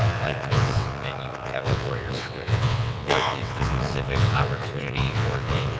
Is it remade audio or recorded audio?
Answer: remade